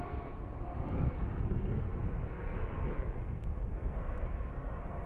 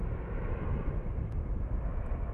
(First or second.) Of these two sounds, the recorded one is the second